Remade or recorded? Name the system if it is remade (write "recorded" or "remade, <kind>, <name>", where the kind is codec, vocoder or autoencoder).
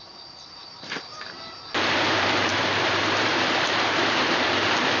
remade, vocoder, BigVGAN v2